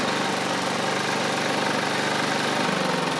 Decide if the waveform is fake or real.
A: real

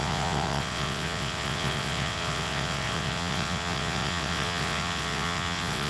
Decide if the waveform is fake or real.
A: fake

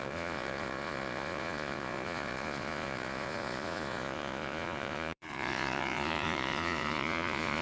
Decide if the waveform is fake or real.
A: fake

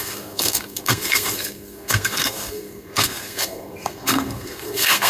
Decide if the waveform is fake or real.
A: fake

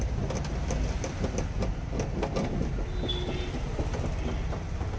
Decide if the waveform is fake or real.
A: real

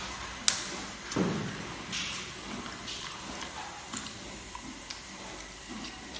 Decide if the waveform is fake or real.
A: real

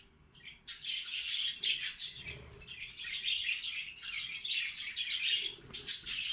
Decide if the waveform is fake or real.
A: real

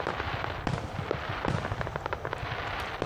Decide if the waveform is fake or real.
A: fake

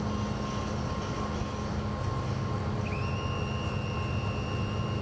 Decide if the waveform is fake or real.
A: real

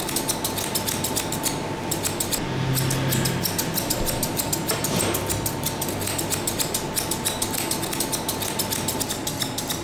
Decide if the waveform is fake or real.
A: real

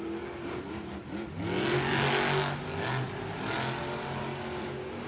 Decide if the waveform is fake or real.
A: real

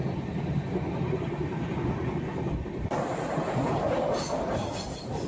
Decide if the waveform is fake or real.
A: real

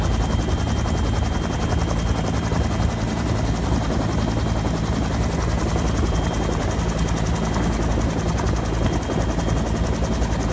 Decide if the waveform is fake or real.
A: real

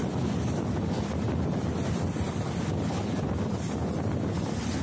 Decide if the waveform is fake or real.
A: real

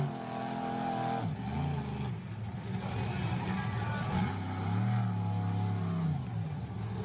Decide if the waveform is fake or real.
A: real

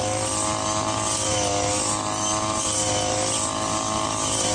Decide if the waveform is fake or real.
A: real